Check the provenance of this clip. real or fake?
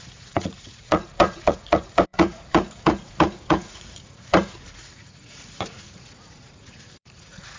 fake